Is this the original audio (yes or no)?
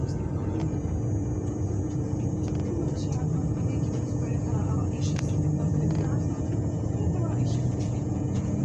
no